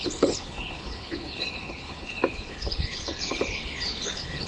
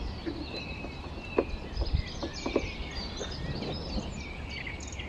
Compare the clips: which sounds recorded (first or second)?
second